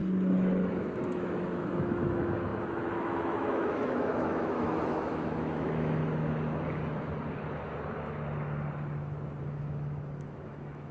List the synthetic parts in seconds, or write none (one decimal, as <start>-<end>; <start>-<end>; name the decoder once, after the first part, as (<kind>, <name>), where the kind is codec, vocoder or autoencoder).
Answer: 0.7-6.0 (autoencoder, DAC-VAE); 9.4-10.9